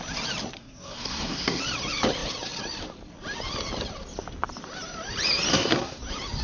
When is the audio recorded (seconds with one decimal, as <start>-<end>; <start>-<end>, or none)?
0.0-0.6; 1.6-5.5; 6.0-6.4